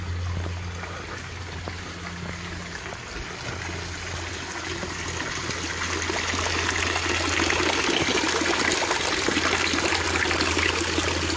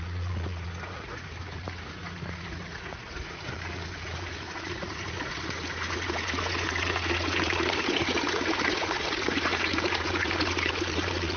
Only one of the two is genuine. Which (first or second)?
first